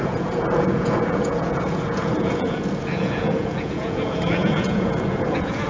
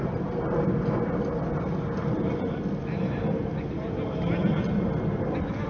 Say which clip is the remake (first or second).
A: first